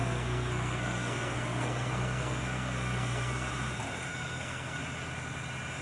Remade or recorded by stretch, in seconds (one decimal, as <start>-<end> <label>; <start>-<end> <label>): 0.0-3.5 remade; 3.5-4.1 recorded; 4.1-4.8 remade; 4.8-5.8 recorded